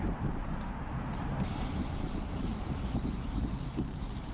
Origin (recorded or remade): remade